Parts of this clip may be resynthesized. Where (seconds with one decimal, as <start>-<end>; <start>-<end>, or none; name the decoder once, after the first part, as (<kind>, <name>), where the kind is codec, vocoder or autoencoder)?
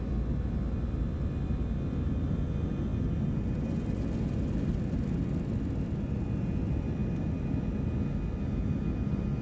none